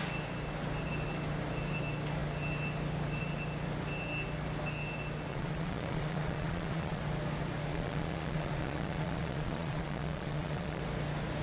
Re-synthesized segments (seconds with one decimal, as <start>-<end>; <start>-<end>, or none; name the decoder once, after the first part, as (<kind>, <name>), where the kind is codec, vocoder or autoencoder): 5.3-7.0 (vocoder, Vocos); 7.7-10.8